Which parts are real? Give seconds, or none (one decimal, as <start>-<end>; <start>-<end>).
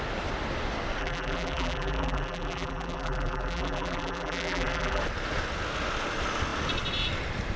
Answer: 0.0-1.0; 5.0-7.6